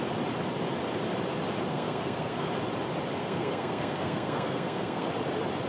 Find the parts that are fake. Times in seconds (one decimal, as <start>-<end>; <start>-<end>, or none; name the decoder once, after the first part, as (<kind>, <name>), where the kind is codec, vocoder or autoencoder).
1.7-2.5 (codec, SNAC); 3.2-5.1